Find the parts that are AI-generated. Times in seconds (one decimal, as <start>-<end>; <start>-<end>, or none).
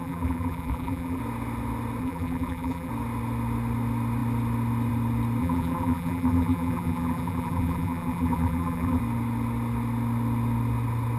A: 0.0-1.2; 2.0-2.9; 5.4-9.0